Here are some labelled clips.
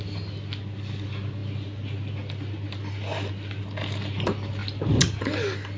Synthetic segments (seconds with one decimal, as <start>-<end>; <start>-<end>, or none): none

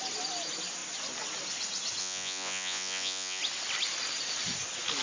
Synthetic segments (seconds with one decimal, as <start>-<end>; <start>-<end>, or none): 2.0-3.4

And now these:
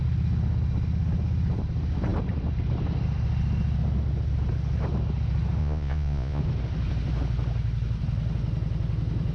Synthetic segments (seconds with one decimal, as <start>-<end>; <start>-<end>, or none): 5.6-6.4

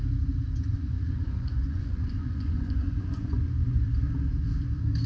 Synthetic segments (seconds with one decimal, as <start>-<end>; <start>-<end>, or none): 0.7-3.8

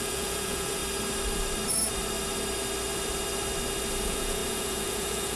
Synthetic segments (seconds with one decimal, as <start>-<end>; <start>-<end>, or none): 0.0-0.8; 4.0-5.4

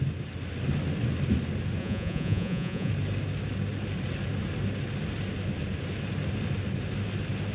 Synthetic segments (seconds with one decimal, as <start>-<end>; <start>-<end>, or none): 1.8-2.9